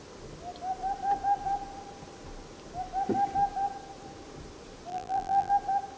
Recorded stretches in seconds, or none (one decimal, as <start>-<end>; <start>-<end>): 0.0-4.9; 5.5-6.0